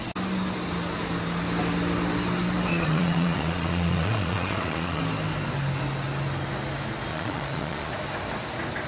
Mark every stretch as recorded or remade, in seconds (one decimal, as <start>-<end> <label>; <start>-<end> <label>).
0.0-2.7 recorded; 2.7-5.0 remade; 5.0-7.1 recorded; 7.1-7.9 remade; 7.9-8.9 recorded